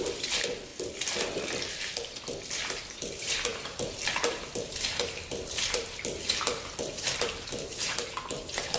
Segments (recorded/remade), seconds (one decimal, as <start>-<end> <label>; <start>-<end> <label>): 0.0-0.7 remade; 0.7-1.7 recorded; 1.7-8.8 remade